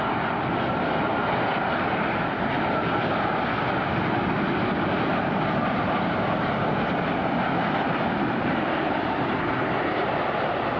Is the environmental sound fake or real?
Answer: real